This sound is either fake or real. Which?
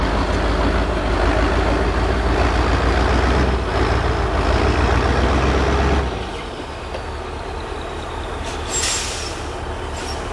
real